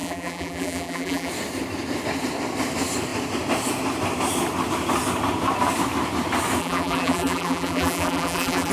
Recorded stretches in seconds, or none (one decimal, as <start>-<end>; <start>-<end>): 1.3-6.6